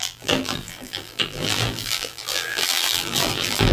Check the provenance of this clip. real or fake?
fake